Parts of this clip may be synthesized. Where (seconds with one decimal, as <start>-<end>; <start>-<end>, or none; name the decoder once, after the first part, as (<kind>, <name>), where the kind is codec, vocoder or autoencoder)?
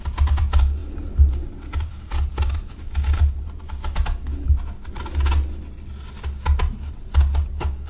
none